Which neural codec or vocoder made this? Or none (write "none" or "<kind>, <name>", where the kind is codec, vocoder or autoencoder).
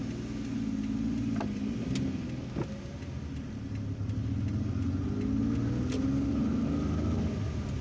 none